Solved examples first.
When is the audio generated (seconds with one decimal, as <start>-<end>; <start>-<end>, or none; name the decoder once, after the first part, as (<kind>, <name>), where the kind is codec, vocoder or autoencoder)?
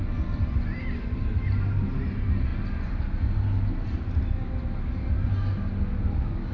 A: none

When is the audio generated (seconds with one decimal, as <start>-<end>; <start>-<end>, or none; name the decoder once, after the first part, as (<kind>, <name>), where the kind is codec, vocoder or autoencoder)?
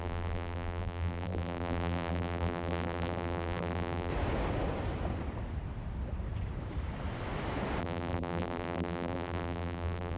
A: 0.0-4.1 (vocoder, BigVGAN v2); 7.8-10.2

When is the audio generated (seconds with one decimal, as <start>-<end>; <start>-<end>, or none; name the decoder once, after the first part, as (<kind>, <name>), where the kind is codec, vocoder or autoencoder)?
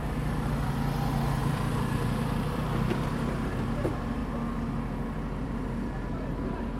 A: 1.4-3.5 (vocoder, BigVGAN v2)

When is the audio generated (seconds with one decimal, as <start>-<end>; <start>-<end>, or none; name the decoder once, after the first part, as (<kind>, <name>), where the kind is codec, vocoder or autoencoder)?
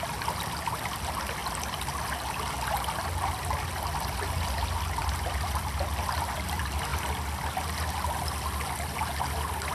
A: none